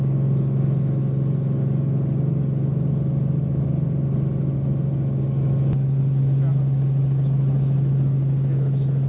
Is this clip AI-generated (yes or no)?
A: no